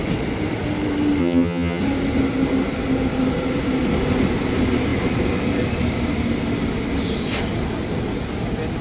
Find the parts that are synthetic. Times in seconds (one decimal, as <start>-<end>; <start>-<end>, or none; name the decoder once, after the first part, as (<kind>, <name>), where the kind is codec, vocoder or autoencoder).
1.2-1.8 (vocoder, HiFi-GAN)

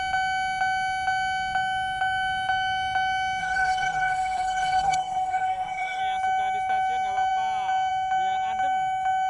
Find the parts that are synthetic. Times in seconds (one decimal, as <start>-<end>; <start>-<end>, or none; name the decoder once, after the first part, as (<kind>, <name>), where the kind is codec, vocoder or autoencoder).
3.4-6.0 (codec, SNAC)

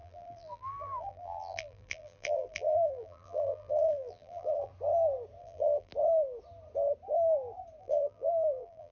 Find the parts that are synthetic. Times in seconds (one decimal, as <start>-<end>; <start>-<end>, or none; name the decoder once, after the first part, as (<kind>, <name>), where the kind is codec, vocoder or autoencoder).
0.0-4.7 (vocoder, BigVGAN v2); 5.4-5.9; 7.8-8.9

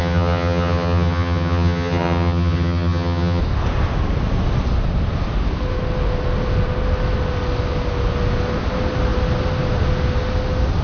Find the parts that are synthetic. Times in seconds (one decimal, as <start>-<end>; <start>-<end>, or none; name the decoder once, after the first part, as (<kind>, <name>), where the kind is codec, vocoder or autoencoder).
0.0-3.4 (vocoder, HiFi-GAN)

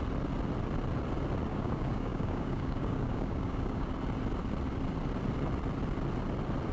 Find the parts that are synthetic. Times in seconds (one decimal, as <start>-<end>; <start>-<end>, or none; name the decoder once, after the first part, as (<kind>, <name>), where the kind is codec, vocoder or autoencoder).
1.5-3.9 (codec, DAC)